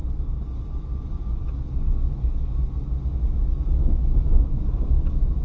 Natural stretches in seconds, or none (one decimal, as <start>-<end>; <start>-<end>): 0.0-3.8